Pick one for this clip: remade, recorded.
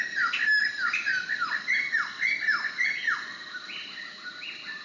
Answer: recorded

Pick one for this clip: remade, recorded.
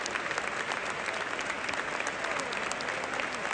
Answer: recorded